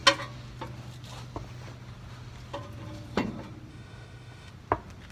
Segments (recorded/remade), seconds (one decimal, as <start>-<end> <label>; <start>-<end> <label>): 0.0-3.7 recorded; 3.7-4.5 remade; 4.5-5.1 recorded